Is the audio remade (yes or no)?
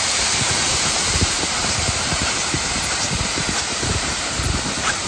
yes